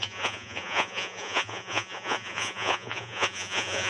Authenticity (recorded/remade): remade